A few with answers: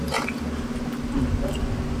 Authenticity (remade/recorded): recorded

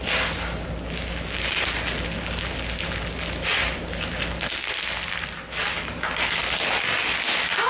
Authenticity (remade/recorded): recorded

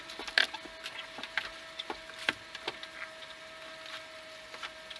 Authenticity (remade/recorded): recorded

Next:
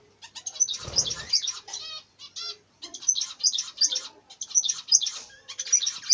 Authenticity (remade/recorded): recorded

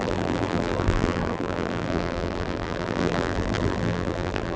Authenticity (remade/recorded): remade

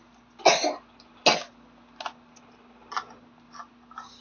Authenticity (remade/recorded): recorded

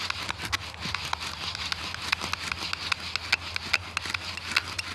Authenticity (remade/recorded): recorded